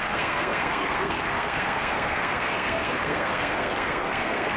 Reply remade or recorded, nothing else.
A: remade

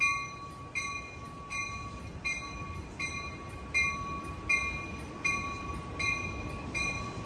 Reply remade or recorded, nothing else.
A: recorded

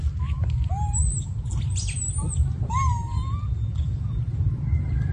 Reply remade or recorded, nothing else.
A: recorded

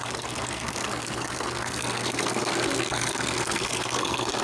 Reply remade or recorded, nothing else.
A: remade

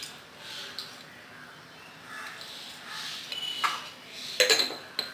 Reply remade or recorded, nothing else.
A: recorded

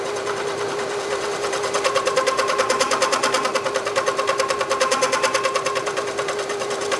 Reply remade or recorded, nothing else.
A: recorded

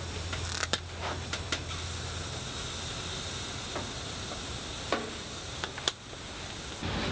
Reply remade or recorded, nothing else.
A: recorded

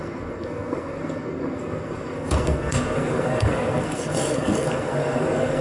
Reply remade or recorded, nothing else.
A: remade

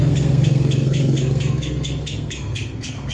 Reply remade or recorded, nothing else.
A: remade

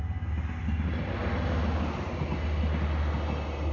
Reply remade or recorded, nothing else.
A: recorded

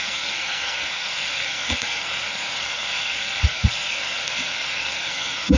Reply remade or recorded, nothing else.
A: remade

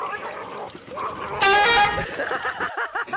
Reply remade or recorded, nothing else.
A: recorded